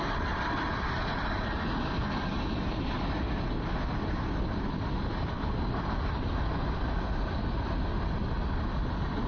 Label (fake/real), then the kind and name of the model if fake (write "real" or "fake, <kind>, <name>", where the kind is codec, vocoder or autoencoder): real